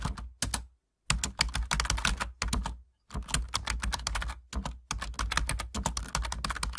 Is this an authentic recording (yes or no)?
yes